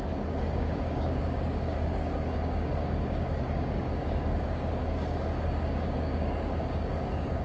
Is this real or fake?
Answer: fake